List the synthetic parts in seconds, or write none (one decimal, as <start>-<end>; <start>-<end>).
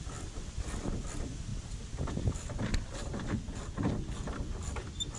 none